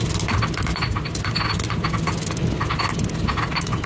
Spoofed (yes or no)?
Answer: no